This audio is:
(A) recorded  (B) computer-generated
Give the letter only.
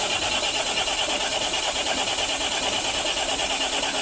A